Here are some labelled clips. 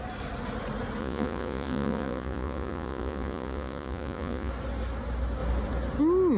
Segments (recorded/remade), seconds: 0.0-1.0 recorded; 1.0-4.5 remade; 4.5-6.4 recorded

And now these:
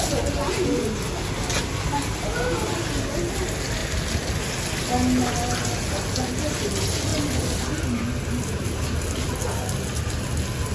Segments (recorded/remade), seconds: 0.0-10.7 recorded

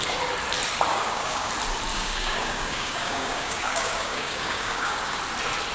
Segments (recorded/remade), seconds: 0.0-0.9 recorded; 0.9-1.5 remade; 1.5-1.9 recorded; 1.9-5.2 remade; 5.2-5.7 recorded

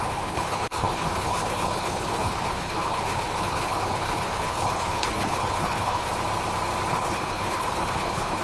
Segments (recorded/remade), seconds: 0.0-6.1 remade; 6.1-6.9 recorded; 6.9-8.4 remade

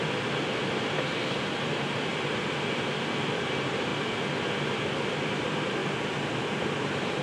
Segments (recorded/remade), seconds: 0.0-2.1 remade; 2.1-3.3 recorded; 3.3-3.9 remade; 3.9-5.1 recorded; 5.1-5.8 remade; 5.8-6.6 recorded; 6.6-7.2 remade